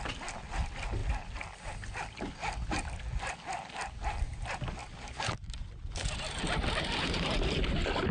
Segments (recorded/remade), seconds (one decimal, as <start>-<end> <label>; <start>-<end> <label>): 0.0-8.1 recorded